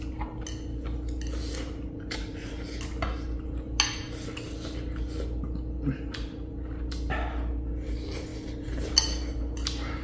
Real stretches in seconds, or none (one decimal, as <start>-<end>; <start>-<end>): 0.0-10.0